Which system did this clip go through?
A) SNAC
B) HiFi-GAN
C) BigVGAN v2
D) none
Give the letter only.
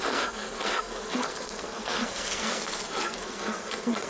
A